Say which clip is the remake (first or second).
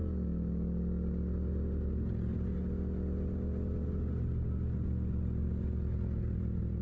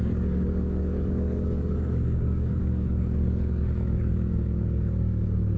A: second